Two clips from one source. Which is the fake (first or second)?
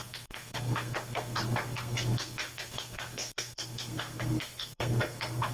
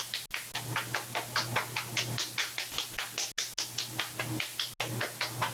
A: first